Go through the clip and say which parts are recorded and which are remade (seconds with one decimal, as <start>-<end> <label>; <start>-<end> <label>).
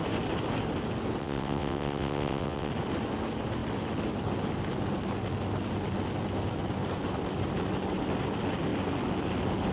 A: 0.0-1.2 recorded; 1.2-2.7 remade; 2.7-9.7 recorded